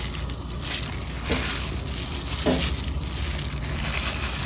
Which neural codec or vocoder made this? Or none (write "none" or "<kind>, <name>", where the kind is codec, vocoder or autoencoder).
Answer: none